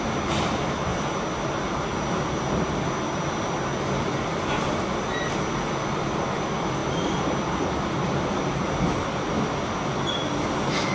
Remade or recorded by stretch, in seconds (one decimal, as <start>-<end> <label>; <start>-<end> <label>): 0.0-10.9 recorded